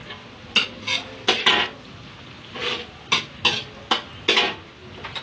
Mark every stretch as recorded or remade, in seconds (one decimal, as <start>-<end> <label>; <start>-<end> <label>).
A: 0.0-5.2 recorded